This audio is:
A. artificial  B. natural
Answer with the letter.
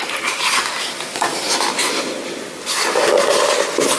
B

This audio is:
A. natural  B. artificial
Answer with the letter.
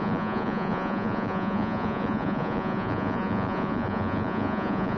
B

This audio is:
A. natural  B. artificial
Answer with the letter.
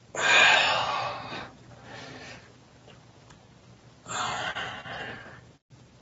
A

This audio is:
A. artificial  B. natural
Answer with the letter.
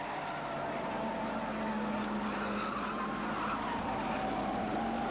B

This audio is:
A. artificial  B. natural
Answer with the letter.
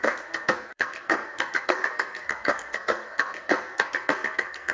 A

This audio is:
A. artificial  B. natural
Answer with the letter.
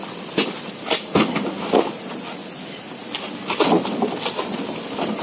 B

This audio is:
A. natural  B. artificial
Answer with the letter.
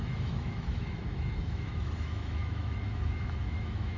B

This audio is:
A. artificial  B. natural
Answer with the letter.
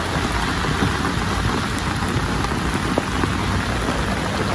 B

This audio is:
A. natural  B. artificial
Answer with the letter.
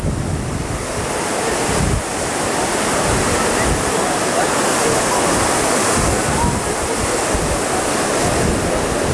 A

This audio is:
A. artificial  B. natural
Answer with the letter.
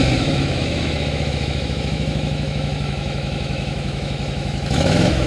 A